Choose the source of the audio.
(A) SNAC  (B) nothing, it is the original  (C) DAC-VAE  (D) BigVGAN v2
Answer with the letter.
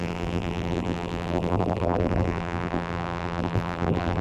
D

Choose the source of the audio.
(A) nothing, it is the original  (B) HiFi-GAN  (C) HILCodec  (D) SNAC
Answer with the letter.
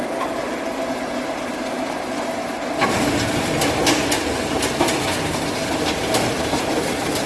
A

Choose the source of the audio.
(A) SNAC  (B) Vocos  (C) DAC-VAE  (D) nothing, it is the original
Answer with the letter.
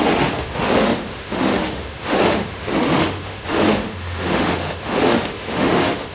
C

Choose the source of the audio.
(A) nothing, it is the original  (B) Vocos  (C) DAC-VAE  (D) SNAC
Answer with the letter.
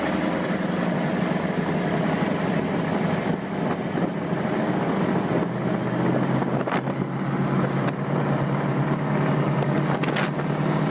A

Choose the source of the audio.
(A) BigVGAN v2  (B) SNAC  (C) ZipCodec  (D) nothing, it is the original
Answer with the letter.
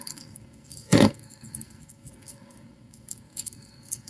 B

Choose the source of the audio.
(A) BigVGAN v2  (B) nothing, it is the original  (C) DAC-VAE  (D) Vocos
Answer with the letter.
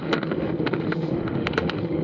C